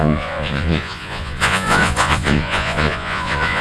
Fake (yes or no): yes